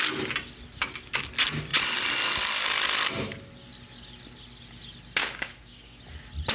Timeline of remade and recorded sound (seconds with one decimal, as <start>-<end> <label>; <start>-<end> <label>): 0.0-5.2 recorded; 5.2-6.0 remade; 6.0-6.5 recorded